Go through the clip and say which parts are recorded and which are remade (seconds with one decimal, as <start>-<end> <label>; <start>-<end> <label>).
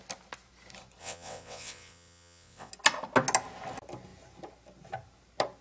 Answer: 0.0-1.0 recorded; 1.0-2.7 remade; 2.7-5.6 recorded